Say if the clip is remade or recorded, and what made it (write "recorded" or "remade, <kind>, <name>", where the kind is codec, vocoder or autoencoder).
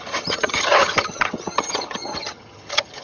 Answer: remade, vocoder, HiFi-GAN